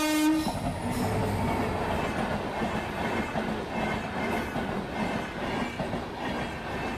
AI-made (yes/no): no